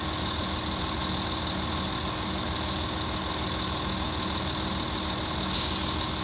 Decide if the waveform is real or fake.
real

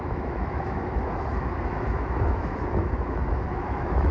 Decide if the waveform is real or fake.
fake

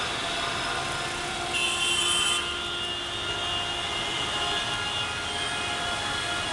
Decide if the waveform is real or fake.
real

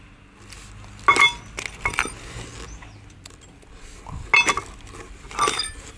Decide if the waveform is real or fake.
real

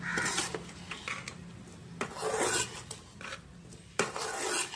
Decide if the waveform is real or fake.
real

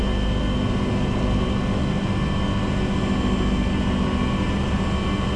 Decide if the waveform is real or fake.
real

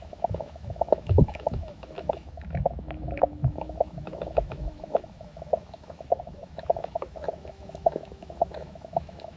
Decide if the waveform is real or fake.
fake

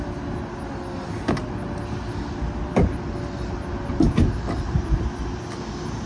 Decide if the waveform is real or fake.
real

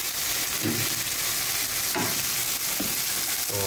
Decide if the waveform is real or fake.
real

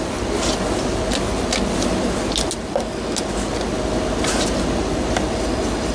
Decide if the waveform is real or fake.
real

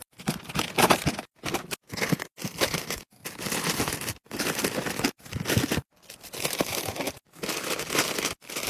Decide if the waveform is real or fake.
real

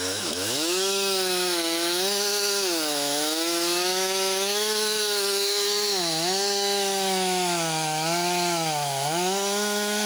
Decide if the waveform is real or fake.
fake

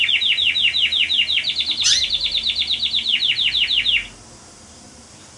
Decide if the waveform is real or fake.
real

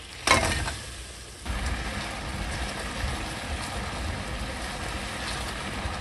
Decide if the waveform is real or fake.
real